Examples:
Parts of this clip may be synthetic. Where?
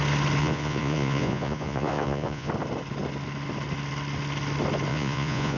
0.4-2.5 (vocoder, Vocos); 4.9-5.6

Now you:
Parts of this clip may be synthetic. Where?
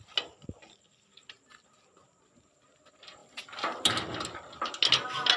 none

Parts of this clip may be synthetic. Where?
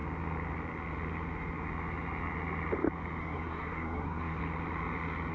3.2-4.4 (codec, SNAC)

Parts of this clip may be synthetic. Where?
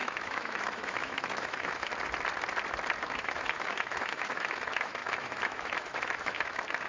0.0-1.9 (autoencoder, DAC-VAE); 3.0-6.9